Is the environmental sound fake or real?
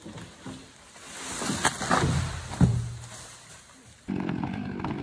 real